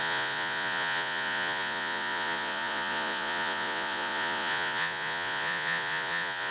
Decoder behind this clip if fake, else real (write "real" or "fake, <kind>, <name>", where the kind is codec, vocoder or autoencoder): fake, vocoder, Vocos